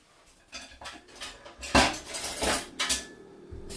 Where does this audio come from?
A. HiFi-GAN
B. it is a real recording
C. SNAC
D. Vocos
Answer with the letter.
B